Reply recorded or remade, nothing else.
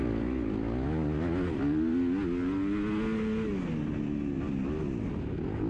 recorded